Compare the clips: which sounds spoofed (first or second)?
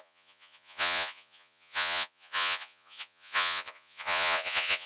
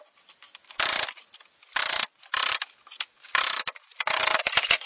first